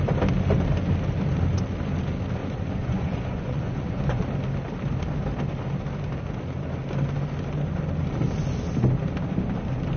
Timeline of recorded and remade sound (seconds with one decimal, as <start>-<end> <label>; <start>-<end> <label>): 0.0-2.4 recorded; 2.4-4.2 remade; 4.2-10.0 recorded